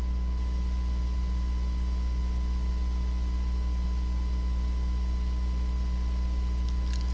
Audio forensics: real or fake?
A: real